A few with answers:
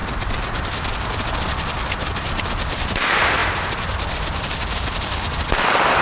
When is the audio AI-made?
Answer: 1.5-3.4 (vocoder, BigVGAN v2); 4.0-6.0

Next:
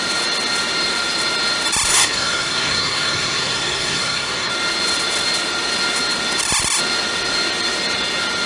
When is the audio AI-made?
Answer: 1.9-4.5 (codec, SNAC)

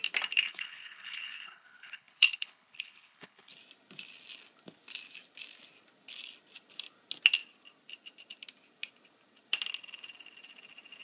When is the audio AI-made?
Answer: 0.5-3.5 (codec, HILCodec)

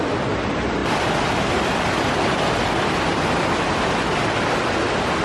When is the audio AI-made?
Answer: 0.8-3.6 (vocoder, BigVGAN v2)

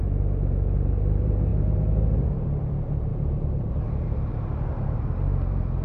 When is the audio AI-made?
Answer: 0.0-5.8 (vocoder, BigVGAN v2)

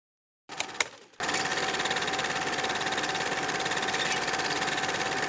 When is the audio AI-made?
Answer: none

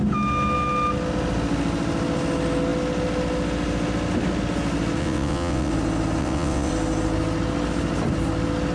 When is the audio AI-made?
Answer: 5.0-5.7 (vocoder, WaveNeXt); 6.2-6.7

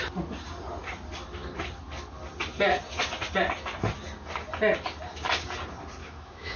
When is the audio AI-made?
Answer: 6.0-6.6 (autoencoder, DAC-VAE)